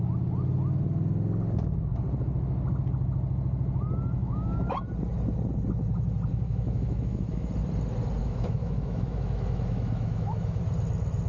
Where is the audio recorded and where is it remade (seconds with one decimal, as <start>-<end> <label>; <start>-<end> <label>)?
0.0-4.2 recorded; 4.2-4.8 remade; 4.8-6.3 recorded; 6.3-7.5 remade; 7.5-8.2 recorded; 8.2-10.6 remade; 10.6-11.3 recorded